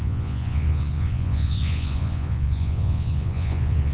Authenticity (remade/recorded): remade